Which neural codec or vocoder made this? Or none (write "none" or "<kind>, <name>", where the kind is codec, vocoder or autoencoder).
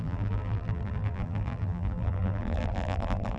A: vocoder, BigVGAN v2